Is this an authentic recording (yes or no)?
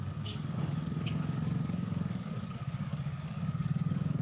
no